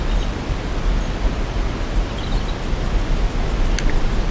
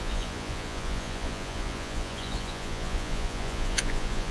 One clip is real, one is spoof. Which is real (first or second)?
first